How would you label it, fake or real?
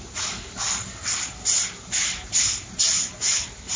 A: real